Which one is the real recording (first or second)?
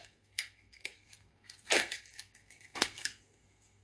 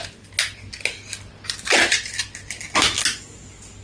second